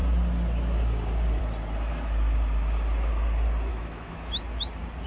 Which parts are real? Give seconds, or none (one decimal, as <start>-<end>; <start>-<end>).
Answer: 0.0-3.7; 4.4-5.1